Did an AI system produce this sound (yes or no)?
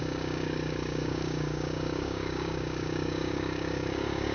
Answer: yes